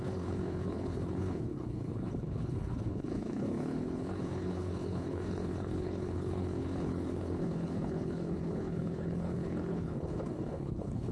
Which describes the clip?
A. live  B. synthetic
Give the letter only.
B